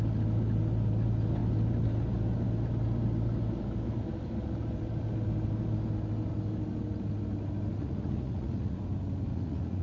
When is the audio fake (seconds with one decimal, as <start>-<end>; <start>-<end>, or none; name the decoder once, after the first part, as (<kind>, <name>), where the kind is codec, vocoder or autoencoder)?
7.7-8.8 (vocoder, Vocos); 9.3-9.8